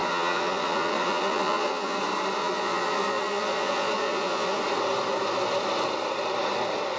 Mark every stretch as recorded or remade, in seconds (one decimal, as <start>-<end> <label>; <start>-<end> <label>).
0.0-2.0 remade; 2.0-2.4 recorded; 2.4-4.6 remade; 4.6-7.0 recorded